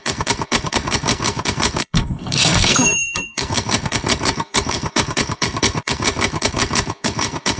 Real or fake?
fake